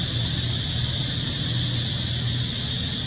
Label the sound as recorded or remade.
recorded